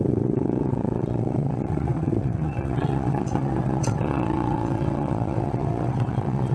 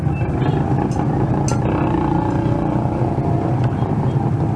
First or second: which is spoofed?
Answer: first